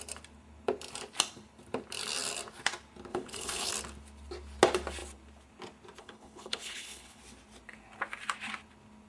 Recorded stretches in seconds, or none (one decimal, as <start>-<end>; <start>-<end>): 0.0-3.1; 3.7-6.0; 7.2-9.1